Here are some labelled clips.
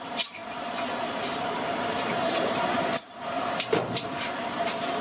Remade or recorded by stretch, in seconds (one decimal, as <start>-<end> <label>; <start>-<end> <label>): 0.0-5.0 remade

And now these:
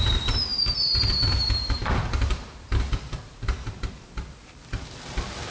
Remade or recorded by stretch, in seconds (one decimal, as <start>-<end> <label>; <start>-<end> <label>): 0.0-5.5 remade

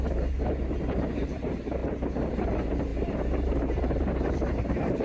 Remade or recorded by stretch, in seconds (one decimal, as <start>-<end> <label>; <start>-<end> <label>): 0.0-1.8 remade; 1.8-2.3 recorded; 2.3-5.0 remade

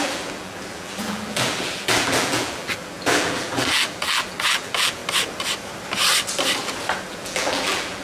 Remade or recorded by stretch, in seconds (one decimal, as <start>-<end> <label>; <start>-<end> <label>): 0.0-5.0 remade; 5.0-7.1 recorded; 7.1-8.0 remade